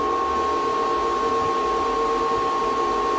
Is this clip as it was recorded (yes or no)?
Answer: yes